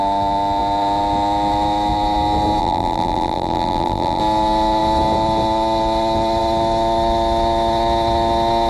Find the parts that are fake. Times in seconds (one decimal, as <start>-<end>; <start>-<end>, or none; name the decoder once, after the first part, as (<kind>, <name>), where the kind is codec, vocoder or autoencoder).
2.6-4.2 (vocoder, BigVGAN v2)